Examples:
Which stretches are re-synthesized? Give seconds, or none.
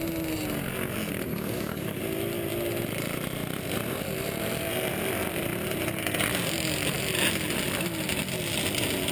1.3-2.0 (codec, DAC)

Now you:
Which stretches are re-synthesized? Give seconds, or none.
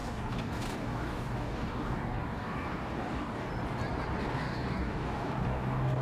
0.0-3.5 (codec, DAC); 4.2-6.0